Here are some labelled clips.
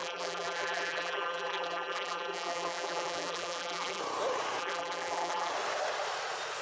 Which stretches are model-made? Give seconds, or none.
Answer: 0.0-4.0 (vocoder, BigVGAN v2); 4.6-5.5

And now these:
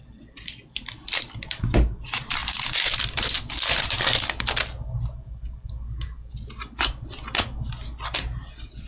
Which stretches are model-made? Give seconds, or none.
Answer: none

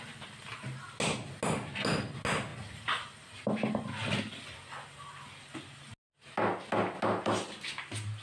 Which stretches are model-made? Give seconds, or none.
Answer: none